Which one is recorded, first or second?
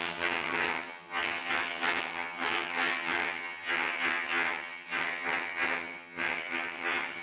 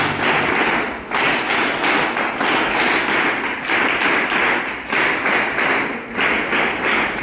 second